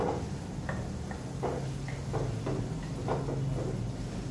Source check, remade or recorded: recorded